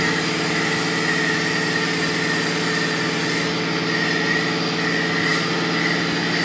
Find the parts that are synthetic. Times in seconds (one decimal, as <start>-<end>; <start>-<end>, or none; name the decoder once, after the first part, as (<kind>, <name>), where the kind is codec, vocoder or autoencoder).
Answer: none